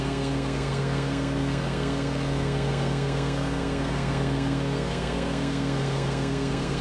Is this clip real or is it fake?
fake